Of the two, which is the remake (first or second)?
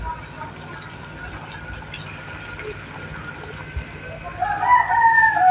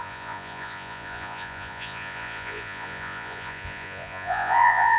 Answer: second